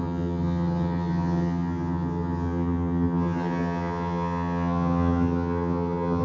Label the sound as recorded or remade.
remade